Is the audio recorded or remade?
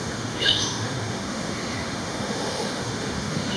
remade